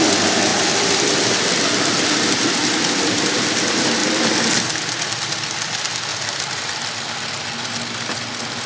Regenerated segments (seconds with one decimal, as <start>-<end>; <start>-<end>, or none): 0.5-3.5; 4.0-5.3; 6.1-6.9